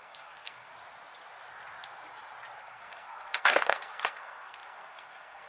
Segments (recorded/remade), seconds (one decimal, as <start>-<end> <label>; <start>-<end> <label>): 0.0-0.7 remade; 0.7-2.6 recorded; 2.6-5.5 remade